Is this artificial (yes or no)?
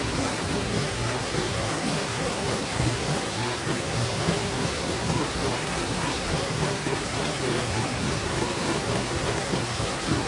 yes